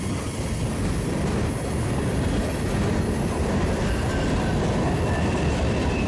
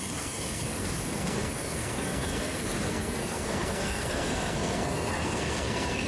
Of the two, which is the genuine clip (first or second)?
first